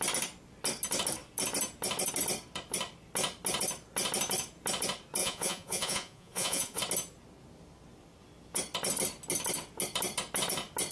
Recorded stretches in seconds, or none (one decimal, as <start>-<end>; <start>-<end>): 0.0-5.2; 6.8-10.9